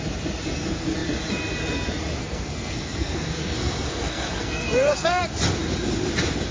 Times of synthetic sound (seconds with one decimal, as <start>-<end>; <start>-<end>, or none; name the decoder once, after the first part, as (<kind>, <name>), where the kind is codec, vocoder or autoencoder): 2.2-5.2 (codec, SNAC)